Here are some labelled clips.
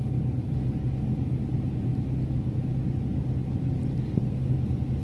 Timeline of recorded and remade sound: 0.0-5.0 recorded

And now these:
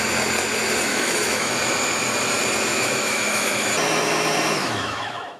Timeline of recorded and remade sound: 0.0-0.9 recorded; 0.9-1.5 remade; 1.5-2.7 recorded; 2.7-3.7 remade; 3.7-4.6 recorded; 4.6-5.4 remade